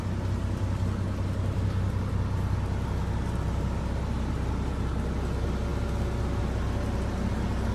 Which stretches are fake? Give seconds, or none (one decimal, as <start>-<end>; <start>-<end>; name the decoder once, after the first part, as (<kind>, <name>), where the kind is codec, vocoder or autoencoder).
none